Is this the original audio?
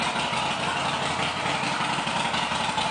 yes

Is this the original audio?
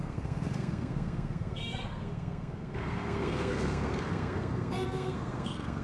no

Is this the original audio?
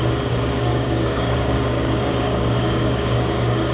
no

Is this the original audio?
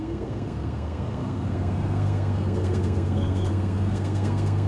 no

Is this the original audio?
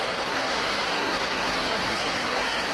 no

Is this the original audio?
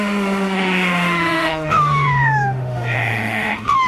no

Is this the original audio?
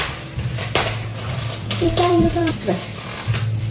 no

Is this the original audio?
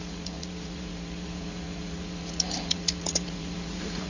no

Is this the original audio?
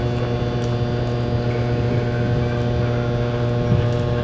yes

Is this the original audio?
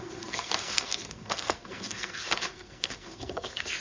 no